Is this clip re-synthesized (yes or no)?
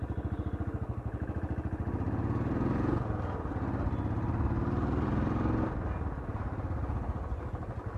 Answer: no